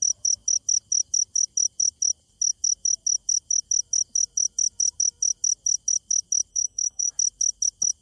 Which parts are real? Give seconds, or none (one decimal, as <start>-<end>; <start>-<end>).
0.0-6.5; 7.1-8.0